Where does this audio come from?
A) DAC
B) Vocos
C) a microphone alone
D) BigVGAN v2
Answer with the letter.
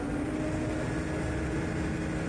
C